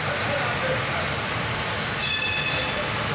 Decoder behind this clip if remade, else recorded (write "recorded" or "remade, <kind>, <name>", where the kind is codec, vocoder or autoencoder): recorded